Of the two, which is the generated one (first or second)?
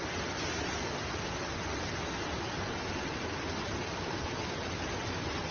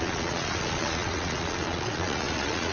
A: second